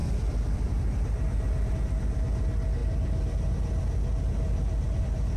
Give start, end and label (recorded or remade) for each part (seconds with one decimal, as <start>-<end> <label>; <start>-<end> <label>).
0.0-5.4 recorded